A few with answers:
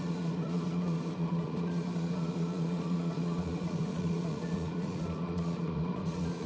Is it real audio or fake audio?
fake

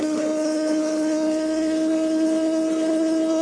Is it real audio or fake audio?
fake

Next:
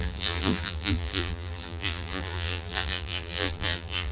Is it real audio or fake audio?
fake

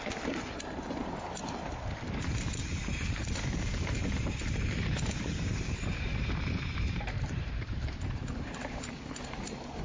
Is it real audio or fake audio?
fake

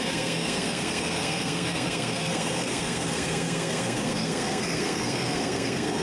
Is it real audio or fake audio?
fake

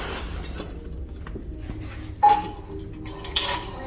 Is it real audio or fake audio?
real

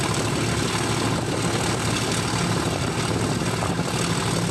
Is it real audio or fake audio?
real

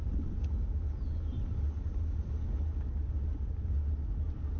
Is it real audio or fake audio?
real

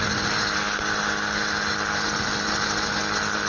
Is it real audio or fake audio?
real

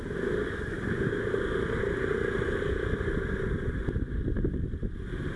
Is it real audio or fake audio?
real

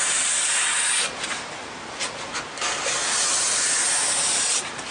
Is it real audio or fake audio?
real